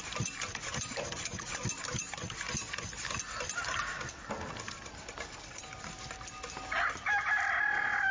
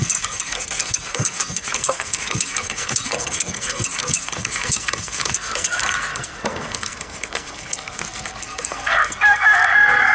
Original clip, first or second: first